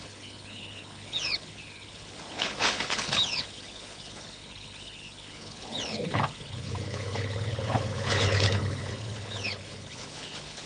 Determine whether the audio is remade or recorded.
remade